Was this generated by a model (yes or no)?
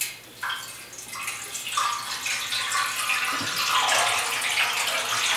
no